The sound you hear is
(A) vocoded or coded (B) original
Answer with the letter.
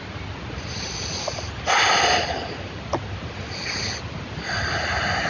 B